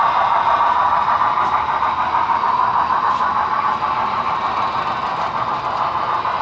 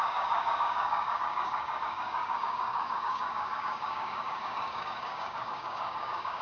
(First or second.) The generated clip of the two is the second